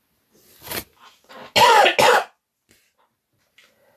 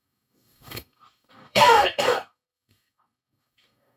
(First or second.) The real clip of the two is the first